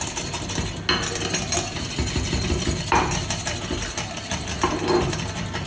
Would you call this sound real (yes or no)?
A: yes